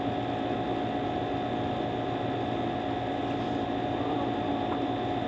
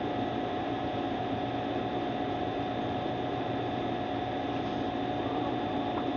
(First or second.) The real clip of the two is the first